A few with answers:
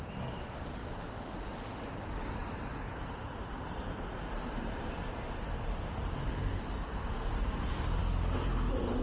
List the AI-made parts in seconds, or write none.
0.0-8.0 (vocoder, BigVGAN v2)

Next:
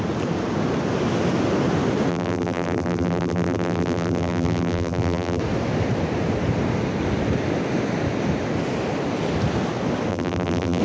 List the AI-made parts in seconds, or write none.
2.1-5.4 (vocoder, BigVGAN v2); 10.1-10.8

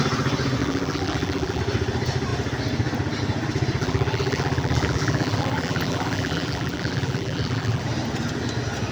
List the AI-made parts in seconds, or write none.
0.6-1.6 (vocoder, BigVGAN v2); 3.8-7.8

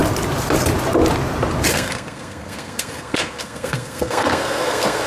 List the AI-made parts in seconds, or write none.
1.7-5.1 (codec, SNAC)